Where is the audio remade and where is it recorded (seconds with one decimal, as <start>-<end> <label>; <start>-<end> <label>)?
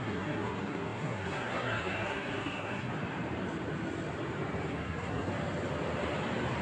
0.0-2.9 remade; 2.9-4.7 recorded; 4.7-5.3 remade; 5.3-6.6 recorded